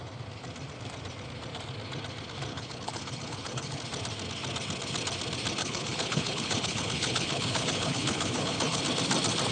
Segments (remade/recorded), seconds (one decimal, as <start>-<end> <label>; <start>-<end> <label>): 0.0-2.5 recorded; 2.5-3.8 remade; 3.8-5.6 recorded; 5.6-8.8 remade; 8.8-9.5 recorded

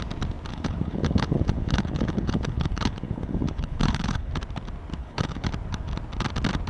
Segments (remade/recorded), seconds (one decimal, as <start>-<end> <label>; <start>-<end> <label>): 0.0-0.5 recorded; 0.5-4.3 remade; 4.3-5.0 recorded; 5.0-5.5 remade; 5.5-6.7 recorded

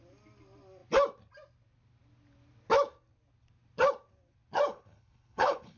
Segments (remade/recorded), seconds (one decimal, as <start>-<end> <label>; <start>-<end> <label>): 0.0-4.7 recorded; 4.7-5.8 remade